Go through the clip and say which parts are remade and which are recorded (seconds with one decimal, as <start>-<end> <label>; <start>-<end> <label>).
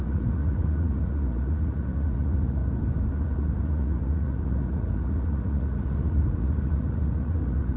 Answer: 0.0-2.6 remade; 2.6-3.1 recorded; 3.1-7.8 remade